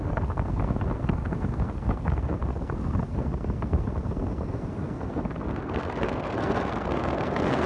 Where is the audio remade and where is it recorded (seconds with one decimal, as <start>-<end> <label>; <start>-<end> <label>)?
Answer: 0.0-7.7 remade

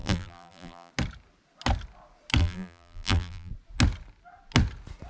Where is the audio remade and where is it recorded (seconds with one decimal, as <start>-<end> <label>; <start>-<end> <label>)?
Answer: 0.0-0.9 remade; 0.9-2.4 recorded; 2.4-3.5 remade; 3.5-5.1 recorded

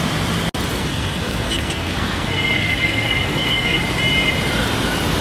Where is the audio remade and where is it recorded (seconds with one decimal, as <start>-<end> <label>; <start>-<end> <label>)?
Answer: 0.0-0.7 recorded; 0.7-3.8 remade; 3.8-5.2 recorded

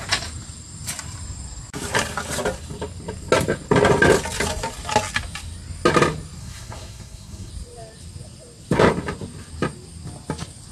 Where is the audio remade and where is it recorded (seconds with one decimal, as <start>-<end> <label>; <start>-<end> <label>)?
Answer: 0.0-6.4 recorded; 6.4-7.5 remade; 7.5-10.7 recorded

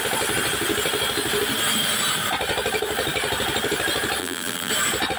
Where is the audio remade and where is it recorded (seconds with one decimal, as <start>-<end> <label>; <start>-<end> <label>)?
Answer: 0.0-4.2 recorded; 4.2-4.7 remade; 4.7-5.2 recorded

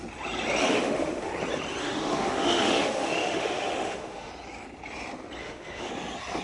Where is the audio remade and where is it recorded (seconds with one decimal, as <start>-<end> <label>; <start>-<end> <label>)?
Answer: 0.0-0.7 recorded; 0.7-1.3 remade; 1.3-1.8 recorded; 1.8-4.3 remade; 4.3-5.4 recorded; 5.4-5.9 remade; 5.9-6.4 recorded

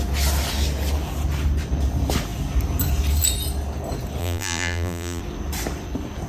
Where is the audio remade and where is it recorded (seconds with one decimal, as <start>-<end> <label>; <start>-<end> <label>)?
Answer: 0.0-4.2 recorded; 4.2-5.2 remade; 5.2-6.3 recorded